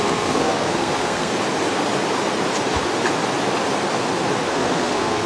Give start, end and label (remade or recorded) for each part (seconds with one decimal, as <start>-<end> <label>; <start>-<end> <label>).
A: 0.0-1.3 remade; 1.3-4.5 recorded; 4.5-5.3 remade